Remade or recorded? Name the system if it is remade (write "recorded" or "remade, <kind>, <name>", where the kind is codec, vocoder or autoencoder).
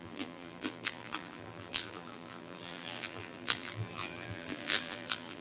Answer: remade, vocoder, BigVGAN v2